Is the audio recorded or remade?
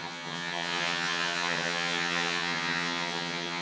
remade